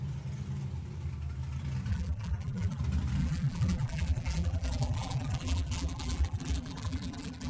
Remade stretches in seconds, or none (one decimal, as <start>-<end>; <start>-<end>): 1.9-2.8; 3.2-7.5